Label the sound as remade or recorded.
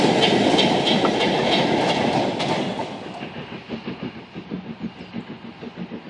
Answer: recorded